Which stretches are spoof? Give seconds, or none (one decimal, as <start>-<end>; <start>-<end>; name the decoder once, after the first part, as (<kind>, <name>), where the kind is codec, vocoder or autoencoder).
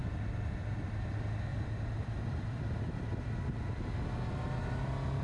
0.0-1.0 (vocoder, BigVGAN v2); 1.5-3.8